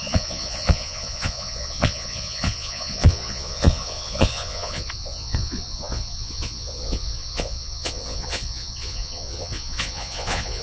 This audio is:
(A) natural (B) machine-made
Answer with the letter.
B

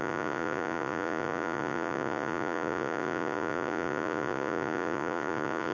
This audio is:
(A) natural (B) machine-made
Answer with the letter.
B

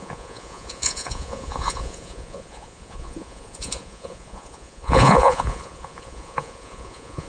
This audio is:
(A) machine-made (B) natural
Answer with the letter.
A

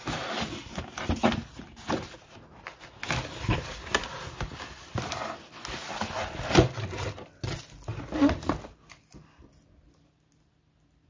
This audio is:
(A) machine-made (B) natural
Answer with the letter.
B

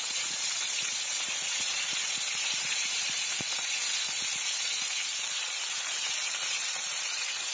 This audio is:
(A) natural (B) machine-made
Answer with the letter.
B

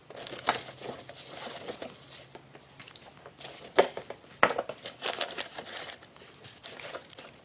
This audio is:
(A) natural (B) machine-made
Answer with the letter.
A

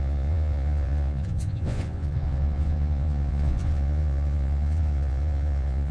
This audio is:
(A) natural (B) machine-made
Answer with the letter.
B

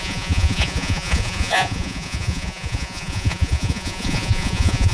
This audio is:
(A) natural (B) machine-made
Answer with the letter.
B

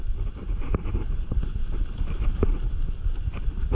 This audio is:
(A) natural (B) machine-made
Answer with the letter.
A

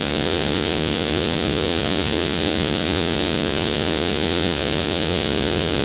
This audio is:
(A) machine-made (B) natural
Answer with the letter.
A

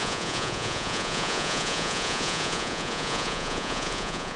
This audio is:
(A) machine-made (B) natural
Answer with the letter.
A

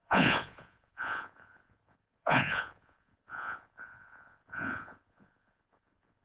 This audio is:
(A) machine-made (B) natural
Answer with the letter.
A